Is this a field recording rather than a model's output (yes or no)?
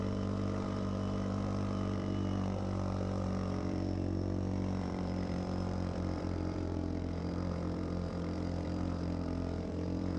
no